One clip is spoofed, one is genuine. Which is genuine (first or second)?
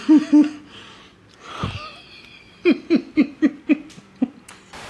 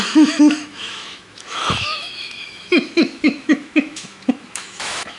first